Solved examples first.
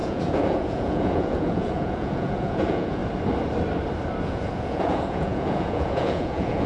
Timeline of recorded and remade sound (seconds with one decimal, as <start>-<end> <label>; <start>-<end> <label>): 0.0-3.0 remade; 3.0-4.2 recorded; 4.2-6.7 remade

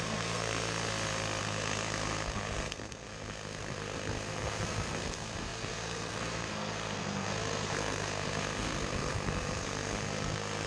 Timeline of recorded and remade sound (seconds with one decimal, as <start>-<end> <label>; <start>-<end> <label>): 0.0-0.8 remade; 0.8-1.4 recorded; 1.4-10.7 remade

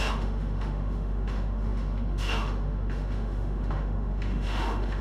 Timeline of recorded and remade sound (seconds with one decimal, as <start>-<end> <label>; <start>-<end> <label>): 0.0-5.0 remade

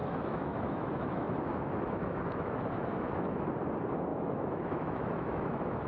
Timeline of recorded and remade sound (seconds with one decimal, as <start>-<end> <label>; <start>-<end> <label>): 0.0-3.5 remade; 3.5-4.1 recorded; 4.1-5.9 remade

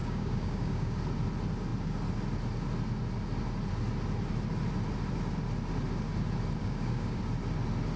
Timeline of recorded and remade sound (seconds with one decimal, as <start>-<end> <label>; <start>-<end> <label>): 0.0-1.0 remade; 1.0-6.6 recorded; 6.6-7.2 remade; 7.2-8.0 recorded